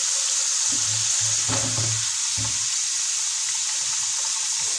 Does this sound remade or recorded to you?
recorded